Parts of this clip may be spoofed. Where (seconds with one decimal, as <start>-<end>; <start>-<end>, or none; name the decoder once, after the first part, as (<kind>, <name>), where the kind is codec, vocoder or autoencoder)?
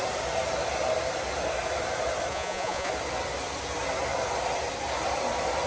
2.3-2.9 (vocoder, Vocos)